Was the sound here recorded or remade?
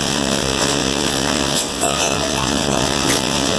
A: remade